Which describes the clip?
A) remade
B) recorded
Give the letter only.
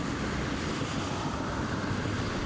A